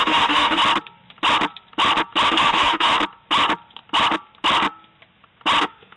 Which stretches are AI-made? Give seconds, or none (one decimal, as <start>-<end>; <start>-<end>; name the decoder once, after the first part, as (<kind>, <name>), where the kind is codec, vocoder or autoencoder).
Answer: 0.0-0.6 (autoencoder, DAC-VAE); 2.3-2.9; 5.6-6.0